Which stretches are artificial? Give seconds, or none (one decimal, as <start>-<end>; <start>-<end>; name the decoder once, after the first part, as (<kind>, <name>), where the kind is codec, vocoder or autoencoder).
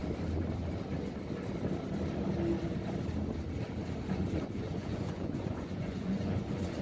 4.1-6.8 (vocoder, Vocos)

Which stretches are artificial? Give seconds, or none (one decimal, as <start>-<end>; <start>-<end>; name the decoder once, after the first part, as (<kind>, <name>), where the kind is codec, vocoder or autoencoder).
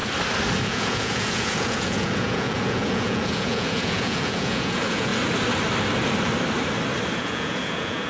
0.6-5.1 (vocoder, Vocos); 7.2-8.1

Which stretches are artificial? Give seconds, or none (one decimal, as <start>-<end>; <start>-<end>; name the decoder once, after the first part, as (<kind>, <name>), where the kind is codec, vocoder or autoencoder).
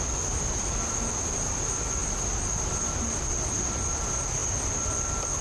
none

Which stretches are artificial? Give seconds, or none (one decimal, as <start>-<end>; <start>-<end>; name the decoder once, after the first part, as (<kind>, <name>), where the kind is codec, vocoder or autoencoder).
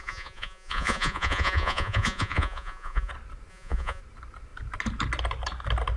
0.0-3.1 (vocoder, Vocos); 3.5-4.0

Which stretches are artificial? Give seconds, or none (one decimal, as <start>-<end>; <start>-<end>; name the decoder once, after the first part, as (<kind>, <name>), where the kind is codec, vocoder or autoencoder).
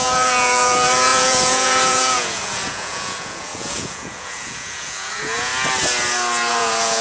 0.0-5.5 (vocoder, Vocos); 6.5-7.0